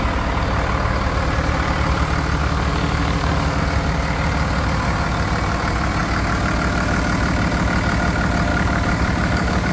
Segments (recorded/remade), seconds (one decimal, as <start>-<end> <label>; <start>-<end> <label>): 0.0-2.4 recorded; 2.4-3.6 remade; 3.6-8.5 recorded; 8.5-9.7 remade